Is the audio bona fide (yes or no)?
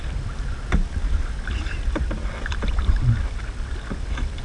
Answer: yes